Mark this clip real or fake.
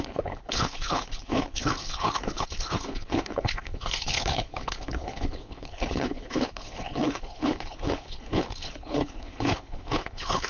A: fake